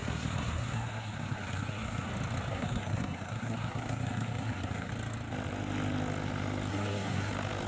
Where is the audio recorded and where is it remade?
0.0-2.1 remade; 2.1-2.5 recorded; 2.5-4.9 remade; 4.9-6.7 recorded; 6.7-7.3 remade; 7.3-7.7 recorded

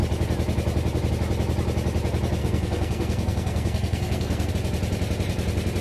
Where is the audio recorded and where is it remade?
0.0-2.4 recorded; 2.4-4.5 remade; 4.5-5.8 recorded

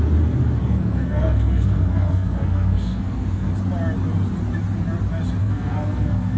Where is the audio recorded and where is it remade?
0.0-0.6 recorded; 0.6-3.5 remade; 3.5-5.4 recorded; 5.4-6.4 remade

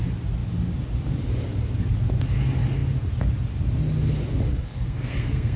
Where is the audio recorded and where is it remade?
0.0-4.5 recorded; 4.5-5.6 remade

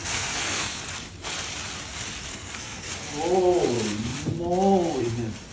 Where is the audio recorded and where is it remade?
0.0-0.8 remade; 0.8-2.3 recorded; 2.3-2.9 remade; 2.9-5.5 recorded